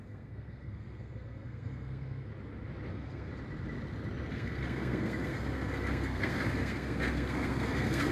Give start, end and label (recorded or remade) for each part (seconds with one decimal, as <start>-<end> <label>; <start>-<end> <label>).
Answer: 0.0-2.3 remade; 2.3-2.9 recorded; 2.9-3.3 remade; 3.3-4.3 recorded; 4.3-8.1 remade